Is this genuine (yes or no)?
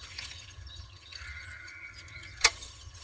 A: no